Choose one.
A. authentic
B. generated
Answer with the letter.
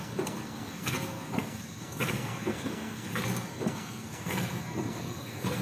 B